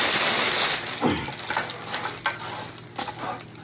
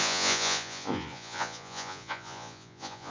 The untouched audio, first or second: first